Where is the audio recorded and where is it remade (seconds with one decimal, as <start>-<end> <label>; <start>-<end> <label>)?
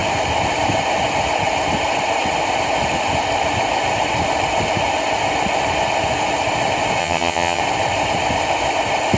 0.0-7.0 recorded; 7.0-7.6 remade; 7.6-9.2 recorded